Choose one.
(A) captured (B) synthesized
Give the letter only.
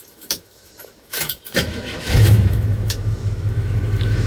B